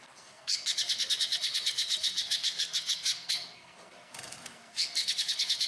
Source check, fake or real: fake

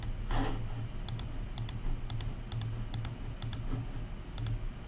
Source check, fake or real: real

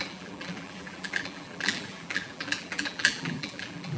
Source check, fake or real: fake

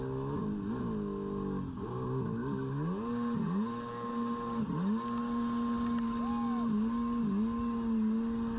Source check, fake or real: real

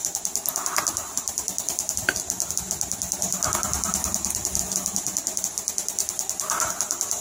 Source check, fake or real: fake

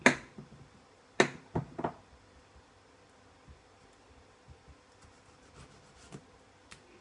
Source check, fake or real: real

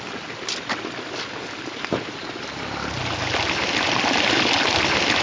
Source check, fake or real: real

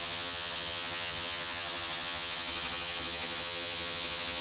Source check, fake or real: fake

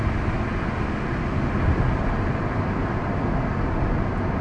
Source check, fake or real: real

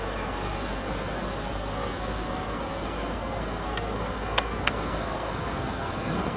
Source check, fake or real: fake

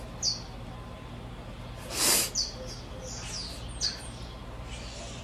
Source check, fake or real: real